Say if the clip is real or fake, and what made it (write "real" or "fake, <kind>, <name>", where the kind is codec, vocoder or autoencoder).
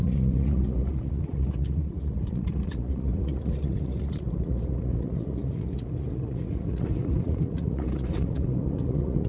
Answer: fake, vocoder, Vocos